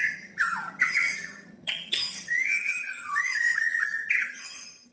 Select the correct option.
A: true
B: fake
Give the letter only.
B